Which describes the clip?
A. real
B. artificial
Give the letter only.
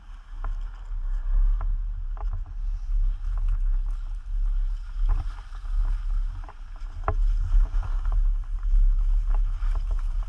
A